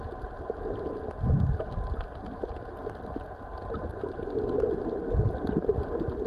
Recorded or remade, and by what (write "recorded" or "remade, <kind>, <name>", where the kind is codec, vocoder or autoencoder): recorded